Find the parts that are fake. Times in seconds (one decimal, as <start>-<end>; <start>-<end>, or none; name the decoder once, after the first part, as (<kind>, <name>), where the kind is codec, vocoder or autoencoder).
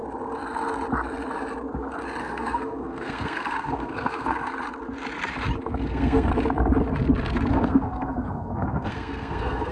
2.2-4.5 (codec, SNAC); 5.7-6.3; 7.5-9.7